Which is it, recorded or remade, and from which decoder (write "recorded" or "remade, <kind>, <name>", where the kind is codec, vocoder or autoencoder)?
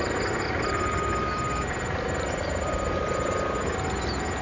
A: recorded